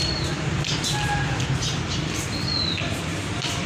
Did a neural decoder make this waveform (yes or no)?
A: yes